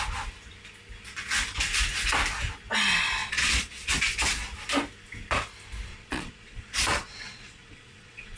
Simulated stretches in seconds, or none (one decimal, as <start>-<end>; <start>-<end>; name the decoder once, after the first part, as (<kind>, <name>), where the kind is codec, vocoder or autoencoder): 3.2-3.9 (vocoder, Vocos); 5.9-8.4